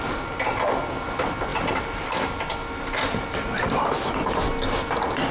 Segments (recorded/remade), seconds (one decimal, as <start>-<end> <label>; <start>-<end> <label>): 0.0-5.3 recorded